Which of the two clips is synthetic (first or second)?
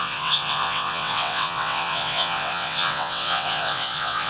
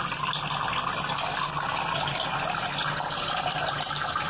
first